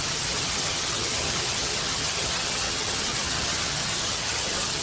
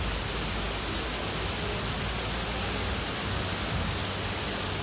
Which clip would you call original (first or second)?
second